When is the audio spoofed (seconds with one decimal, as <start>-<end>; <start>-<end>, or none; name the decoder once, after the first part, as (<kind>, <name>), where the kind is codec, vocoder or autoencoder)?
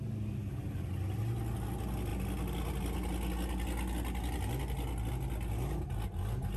none